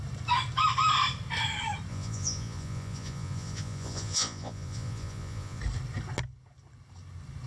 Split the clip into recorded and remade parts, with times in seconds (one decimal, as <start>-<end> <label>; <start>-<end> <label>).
0.0-1.9 recorded; 1.9-5.6 remade; 5.6-7.5 recorded